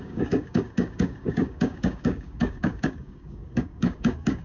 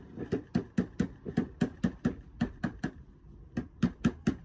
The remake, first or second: first